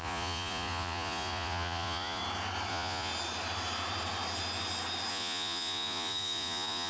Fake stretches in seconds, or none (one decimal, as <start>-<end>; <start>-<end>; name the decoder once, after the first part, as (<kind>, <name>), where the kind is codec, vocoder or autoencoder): 0.0-2.2 (vocoder, Vocos); 2.7-3.1; 5.1-6.9